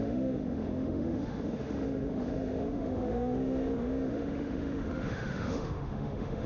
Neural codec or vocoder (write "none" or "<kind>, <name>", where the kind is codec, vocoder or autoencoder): autoencoder, DAC-VAE